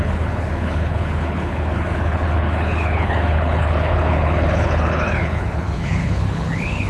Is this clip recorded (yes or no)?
no